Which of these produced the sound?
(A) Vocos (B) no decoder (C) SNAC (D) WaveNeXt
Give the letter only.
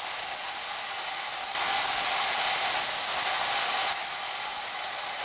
B